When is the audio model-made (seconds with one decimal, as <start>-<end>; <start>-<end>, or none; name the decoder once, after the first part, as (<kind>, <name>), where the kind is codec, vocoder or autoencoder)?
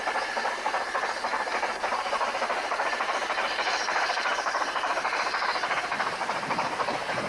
0.0-7.3 (vocoder, BigVGAN v2)